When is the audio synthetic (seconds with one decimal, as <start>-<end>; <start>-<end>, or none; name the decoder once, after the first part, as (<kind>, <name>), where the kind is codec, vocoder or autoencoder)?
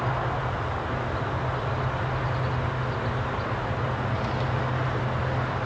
none